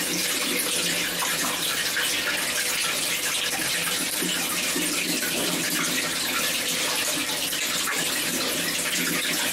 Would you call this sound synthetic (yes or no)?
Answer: no